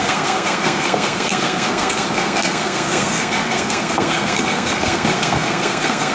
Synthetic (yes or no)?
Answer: yes